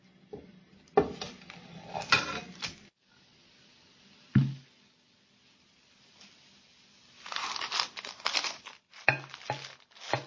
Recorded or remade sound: recorded